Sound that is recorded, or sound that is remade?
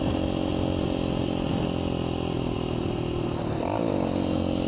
recorded